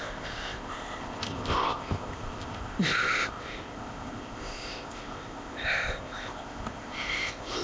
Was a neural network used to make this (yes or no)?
yes